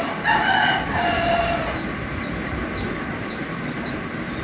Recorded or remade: recorded